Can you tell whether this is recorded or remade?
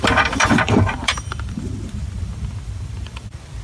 remade